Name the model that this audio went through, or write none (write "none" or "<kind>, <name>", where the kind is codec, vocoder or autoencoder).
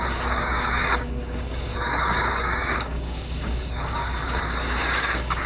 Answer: codec, DAC